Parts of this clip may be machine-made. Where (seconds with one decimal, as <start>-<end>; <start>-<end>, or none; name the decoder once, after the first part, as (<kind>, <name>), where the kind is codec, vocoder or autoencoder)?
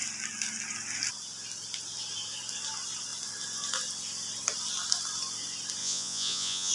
5.8-6.7 (vocoder, Vocos)